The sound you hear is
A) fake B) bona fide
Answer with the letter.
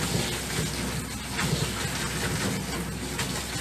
B